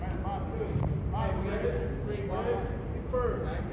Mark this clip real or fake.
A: real